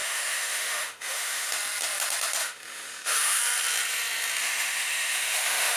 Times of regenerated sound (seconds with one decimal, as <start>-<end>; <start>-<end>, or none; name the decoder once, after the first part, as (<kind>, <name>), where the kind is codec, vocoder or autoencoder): 0.0-1.5 (autoencoder, DAC-VAE); 2.4-3.4; 4.4-5.8